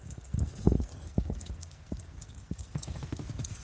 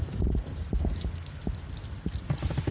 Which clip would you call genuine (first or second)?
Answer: second